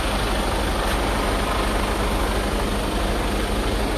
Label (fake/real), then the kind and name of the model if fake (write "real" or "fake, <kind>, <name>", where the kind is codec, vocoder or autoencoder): real